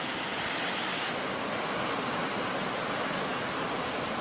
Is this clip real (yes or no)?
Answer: yes